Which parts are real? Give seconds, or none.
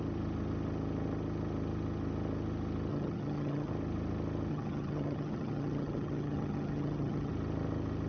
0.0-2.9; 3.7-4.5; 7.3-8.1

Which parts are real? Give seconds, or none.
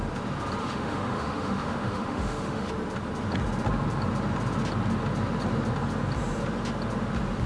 0.0-0.6; 2.7-7.5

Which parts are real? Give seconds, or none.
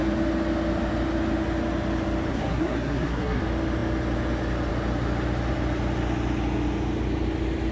0.0-2.3; 3.4-7.7